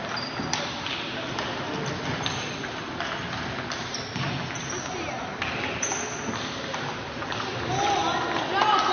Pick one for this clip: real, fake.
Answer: real